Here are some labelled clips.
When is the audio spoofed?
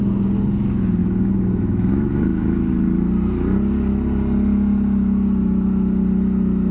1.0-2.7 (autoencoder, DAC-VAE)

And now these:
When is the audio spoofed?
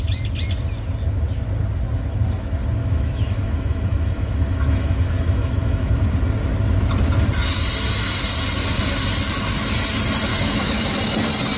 2.8-5.9 (autoencoder, DAC-VAE); 10.3-10.9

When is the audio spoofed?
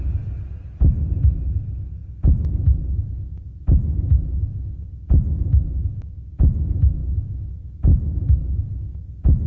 7.9-8.4 (autoencoder, DAC-VAE)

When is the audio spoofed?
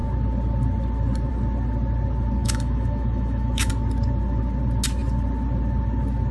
2.4-3.7 (autoencoder, DAC-VAE)